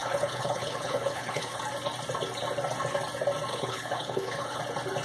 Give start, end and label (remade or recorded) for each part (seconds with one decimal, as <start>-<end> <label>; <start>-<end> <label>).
0.0-1.6 remade; 1.6-3.5 recorded; 3.5-4.6 remade; 4.6-5.0 recorded

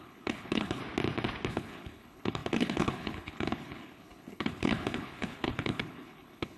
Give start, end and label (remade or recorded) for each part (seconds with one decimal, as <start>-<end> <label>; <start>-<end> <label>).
0.0-0.8 remade; 0.8-1.5 recorded; 1.5-6.6 remade

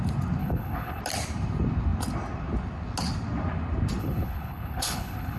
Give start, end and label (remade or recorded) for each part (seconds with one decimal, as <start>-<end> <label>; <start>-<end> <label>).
0.0-0.4 recorded; 0.4-1.0 remade; 1.0-4.0 recorded; 4.0-5.4 remade

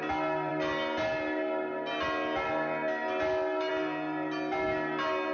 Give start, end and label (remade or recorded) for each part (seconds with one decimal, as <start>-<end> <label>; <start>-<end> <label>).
0.0-5.3 recorded